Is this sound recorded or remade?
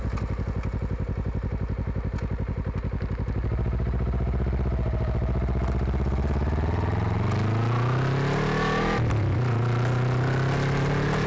recorded